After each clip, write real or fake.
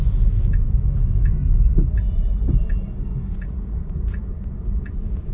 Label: real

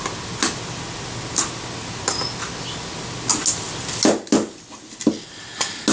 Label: real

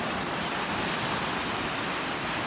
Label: real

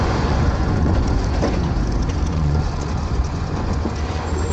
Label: fake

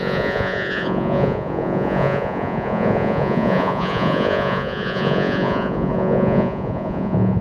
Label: fake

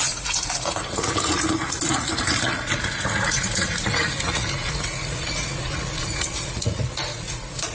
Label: fake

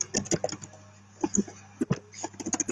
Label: real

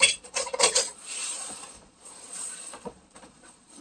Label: fake